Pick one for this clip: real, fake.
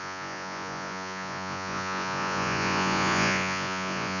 fake